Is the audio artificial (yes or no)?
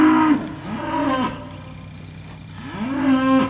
no